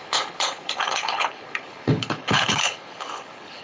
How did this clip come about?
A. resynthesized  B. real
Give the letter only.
A